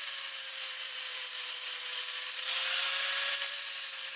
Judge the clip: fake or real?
fake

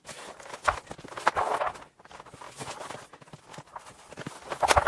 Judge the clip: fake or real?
real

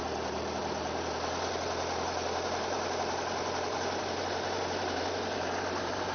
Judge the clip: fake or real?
fake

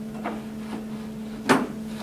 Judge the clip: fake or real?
real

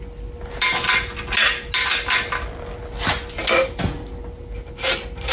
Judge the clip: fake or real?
real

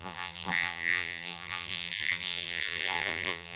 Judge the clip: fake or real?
fake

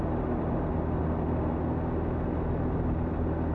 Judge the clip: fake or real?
real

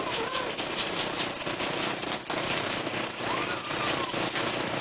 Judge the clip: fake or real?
real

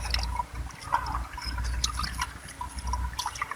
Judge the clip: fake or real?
real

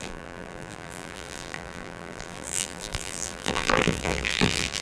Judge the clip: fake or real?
fake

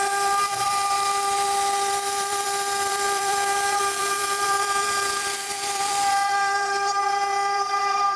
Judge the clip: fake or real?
fake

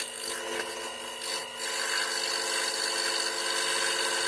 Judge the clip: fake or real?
real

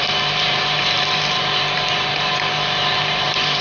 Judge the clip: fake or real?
fake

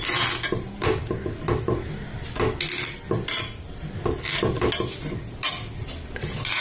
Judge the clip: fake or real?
real